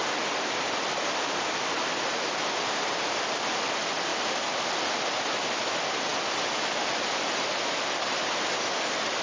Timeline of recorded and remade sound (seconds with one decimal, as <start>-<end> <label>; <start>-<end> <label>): 0.0-9.2 recorded